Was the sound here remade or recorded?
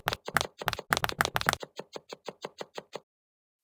recorded